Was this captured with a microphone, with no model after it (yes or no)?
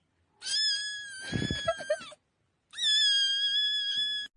yes